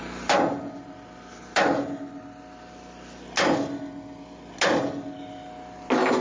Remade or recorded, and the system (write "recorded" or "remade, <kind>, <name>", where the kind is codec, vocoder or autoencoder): recorded